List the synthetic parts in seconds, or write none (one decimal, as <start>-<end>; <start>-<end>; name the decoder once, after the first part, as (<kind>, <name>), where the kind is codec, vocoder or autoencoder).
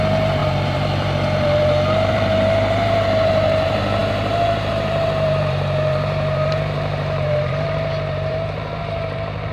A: 0.0-9.5 (vocoder, BigVGAN v2)